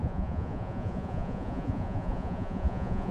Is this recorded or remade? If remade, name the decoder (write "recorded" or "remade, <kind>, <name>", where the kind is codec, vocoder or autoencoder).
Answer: remade, vocoder, Vocos